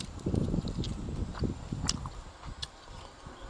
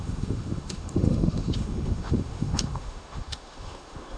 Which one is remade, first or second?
second